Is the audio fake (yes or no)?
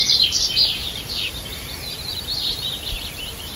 yes